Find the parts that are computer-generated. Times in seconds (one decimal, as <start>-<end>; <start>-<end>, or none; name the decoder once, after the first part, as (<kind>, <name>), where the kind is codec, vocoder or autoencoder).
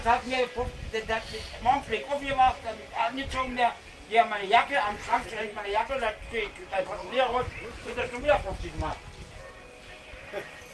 0.8-3.3 (vocoder, BigVGAN v2); 5.0-5.9; 7.0-8.7